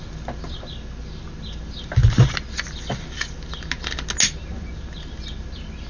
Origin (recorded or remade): recorded